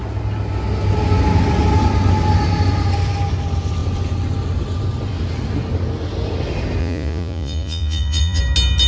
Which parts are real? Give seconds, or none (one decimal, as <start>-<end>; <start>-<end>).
0.0-6.8; 8.4-8.9